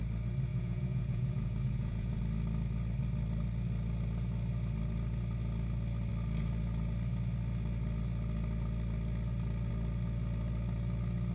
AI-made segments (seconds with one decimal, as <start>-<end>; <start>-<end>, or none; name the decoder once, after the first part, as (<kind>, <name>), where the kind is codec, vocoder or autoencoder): 0.5-2.2 (vocoder, Vocos)